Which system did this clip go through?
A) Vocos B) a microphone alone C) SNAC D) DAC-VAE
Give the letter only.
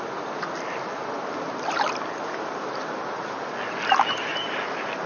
B